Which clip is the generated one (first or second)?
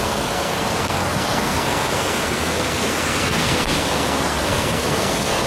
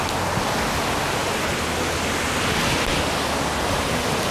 first